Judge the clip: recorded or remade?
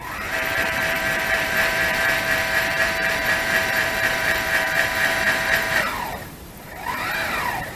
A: remade